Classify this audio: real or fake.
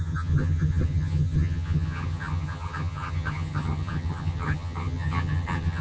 fake